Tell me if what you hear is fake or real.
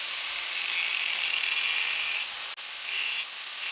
real